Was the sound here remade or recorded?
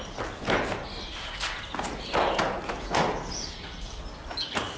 recorded